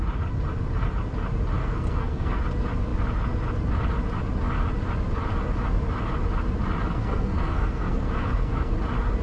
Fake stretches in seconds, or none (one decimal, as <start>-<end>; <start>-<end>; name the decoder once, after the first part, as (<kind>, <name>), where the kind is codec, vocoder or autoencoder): 1.6-2.4 (codec, SNAC); 6.9-8.7